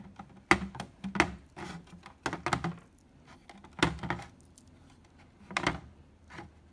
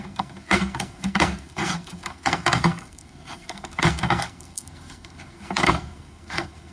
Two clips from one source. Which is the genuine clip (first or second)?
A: first